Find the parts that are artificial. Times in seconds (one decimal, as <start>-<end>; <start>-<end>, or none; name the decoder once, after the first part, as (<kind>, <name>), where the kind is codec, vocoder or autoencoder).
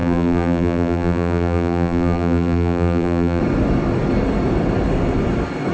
0.0-3.4 (vocoder, BigVGAN v2)